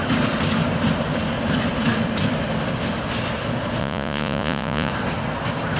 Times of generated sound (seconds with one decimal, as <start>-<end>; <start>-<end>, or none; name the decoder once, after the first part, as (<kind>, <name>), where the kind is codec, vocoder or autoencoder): 3.8-4.9 (vocoder, Vocos)